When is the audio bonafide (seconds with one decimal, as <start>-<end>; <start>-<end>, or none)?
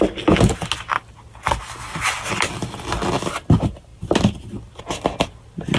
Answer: 0.0-5.8